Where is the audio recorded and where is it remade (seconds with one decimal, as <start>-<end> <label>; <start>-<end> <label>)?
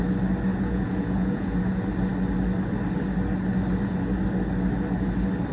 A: 0.0-0.5 recorded; 0.5-1.6 remade; 1.6-5.5 recorded